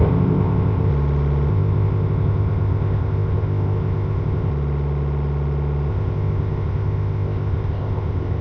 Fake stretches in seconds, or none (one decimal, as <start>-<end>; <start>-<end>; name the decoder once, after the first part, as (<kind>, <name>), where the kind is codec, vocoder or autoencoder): 0.0-0.9 (codec, ZipCodec); 1.5-4.5; 5.9-8.4